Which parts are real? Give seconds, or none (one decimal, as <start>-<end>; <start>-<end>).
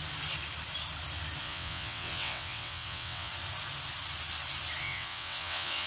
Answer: 0.0-1.4; 3.3-4.8